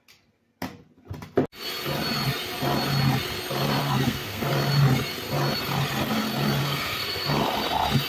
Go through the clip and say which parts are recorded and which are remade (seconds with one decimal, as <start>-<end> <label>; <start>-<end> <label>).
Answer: 0.0-3.8 recorded; 3.8-4.5 remade; 4.5-6.6 recorded; 6.6-7.3 remade; 7.3-8.1 recorded